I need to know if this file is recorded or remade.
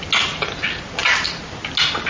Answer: recorded